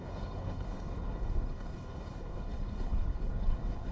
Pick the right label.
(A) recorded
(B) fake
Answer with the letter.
B